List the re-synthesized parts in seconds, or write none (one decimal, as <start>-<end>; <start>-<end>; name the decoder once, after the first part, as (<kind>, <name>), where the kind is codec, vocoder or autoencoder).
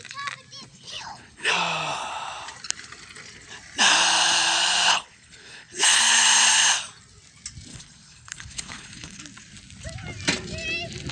0.7-1.5 (codec, HILCodec); 4.9-6.0; 7.7-9.2